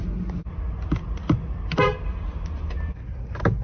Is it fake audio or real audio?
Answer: real